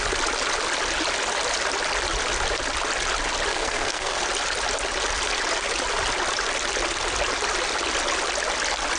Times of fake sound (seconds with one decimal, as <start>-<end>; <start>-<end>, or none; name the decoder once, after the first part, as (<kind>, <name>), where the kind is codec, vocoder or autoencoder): 3.5-4.2 (codec, SNAC)